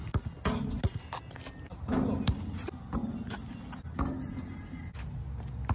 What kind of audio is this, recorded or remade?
recorded